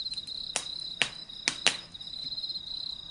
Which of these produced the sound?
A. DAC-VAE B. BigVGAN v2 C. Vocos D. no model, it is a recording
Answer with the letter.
D